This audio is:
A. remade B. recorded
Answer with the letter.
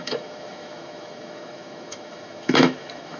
A